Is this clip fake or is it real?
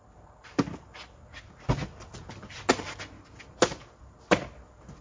real